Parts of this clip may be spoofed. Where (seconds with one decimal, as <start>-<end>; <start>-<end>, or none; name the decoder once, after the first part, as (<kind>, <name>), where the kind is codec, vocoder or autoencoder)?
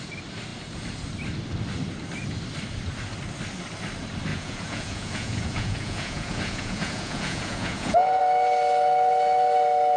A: 4.3-8.2 (vocoder, Vocos)